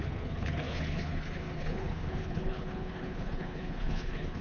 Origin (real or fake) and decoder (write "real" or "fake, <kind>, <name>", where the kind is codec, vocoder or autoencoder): fake, codec, HILCodec